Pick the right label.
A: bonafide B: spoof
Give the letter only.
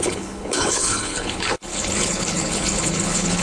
B